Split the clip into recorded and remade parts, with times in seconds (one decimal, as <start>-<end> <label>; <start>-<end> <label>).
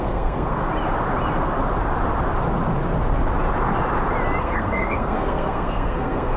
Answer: 0.0-0.6 remade; 0.6-4.4 recorded; 4.4-6.4 remade